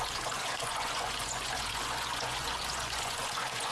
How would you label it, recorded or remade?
remade